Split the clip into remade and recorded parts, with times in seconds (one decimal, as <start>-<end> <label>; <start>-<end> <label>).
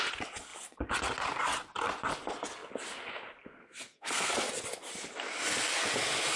0.0-3.6 recorded; 3.6-4.3 remade; 4.3-6.4 recorded